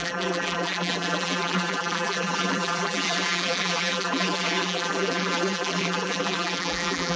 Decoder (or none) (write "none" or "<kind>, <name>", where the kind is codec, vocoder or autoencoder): vocoder, BigVGAN v2